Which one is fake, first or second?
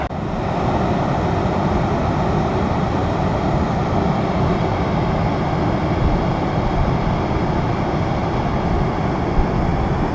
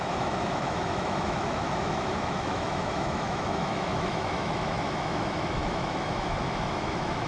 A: second